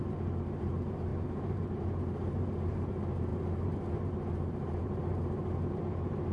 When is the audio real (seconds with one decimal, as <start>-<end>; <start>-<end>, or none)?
none